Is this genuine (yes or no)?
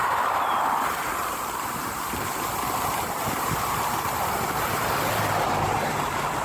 no